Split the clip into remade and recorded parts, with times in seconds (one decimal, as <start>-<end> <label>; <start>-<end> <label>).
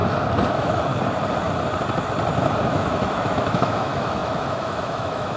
0.0-0.5 recorded; 0.5-0.9 remade; 0.9-2.7 recorded; 2.7-5.4 remade